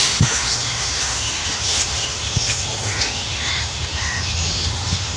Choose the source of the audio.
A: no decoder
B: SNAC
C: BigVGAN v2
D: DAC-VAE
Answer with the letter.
D